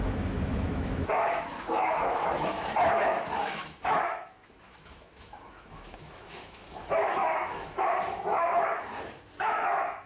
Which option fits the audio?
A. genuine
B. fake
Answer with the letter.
B